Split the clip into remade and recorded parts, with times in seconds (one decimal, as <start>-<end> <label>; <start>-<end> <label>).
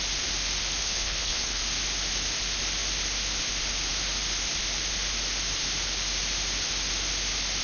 0.0-0.8 recorded; 0.8-1.6 remade; 1.6-7.6 recorded